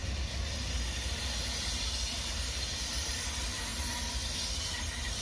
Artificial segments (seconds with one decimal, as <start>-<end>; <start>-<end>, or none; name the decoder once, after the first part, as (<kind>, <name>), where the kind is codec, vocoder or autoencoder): 3.1-3.7 (vocoder, BigVGAN v2); 4.5-5.2